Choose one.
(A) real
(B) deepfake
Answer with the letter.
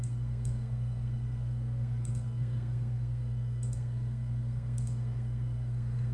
B